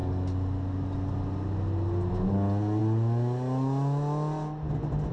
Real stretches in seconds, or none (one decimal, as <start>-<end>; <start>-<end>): 0.0-5.1